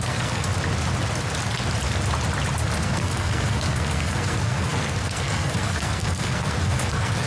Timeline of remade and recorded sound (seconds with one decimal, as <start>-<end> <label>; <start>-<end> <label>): 0.0-0.5 remade; 0.5-2.8 recorded; 2.8-7.3 remade